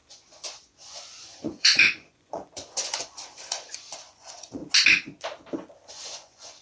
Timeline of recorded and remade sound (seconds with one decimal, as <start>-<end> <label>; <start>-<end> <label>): 0.0-4.6 remade; 4.6-5.9 recorded; 5.9-6.6 remade